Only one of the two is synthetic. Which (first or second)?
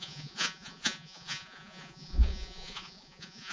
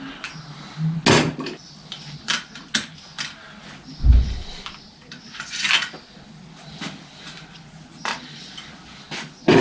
first